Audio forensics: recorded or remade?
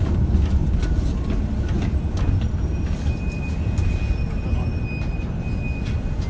recorded